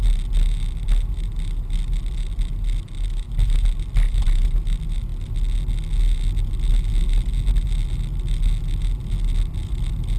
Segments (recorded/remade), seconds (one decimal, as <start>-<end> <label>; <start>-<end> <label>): 0.0-10.2 recorded